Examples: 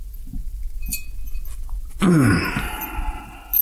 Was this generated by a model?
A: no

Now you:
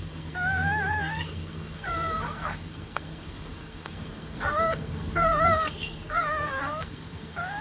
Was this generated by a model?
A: yes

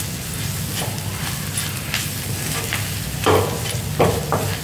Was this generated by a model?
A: no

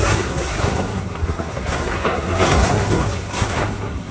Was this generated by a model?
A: yes